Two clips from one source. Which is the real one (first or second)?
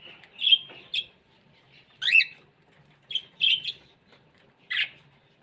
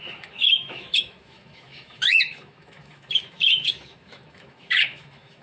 first